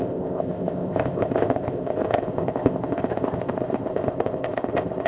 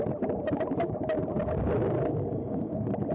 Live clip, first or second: second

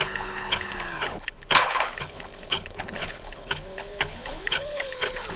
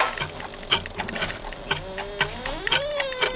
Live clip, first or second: second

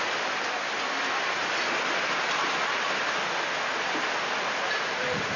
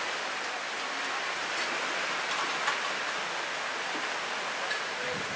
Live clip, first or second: first